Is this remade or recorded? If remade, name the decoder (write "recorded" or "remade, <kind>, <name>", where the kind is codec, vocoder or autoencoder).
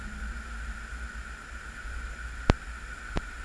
recorded